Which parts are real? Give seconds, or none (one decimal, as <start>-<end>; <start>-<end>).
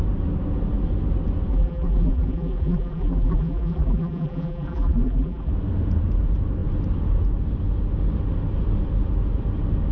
0.0-1.5; 5.5-9.9